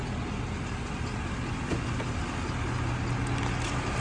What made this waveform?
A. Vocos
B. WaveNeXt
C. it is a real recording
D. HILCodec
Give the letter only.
C